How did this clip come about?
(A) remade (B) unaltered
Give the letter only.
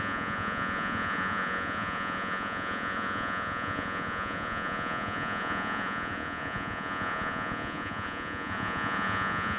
A